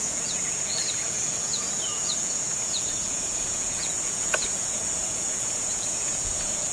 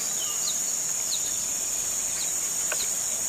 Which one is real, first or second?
second